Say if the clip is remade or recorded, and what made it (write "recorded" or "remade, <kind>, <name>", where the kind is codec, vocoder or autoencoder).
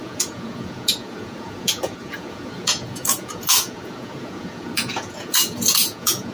remade, vocoder, Vocos